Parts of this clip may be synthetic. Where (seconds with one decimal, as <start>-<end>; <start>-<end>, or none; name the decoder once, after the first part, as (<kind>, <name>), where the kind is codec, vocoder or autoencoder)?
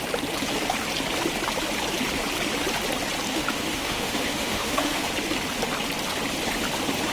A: 3.3-5.1 (autoencoder, DAC-VAE)